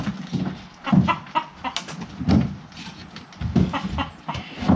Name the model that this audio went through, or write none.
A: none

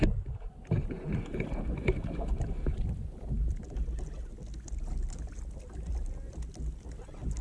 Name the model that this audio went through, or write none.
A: none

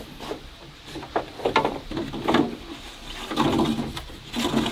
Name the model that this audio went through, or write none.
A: none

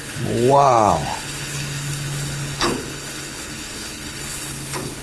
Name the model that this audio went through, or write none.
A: codec, HILCodec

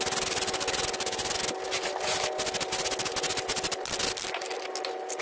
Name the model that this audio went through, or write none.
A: none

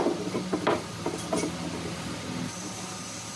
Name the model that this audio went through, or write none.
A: none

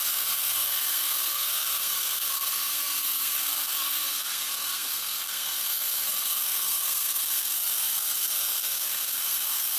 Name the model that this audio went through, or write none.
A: codec, SNAC